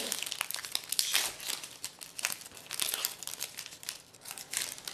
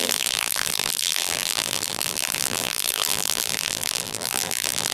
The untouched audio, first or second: first